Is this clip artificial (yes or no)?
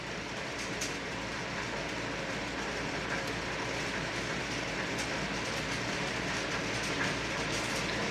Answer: no